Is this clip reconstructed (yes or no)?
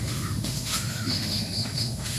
yes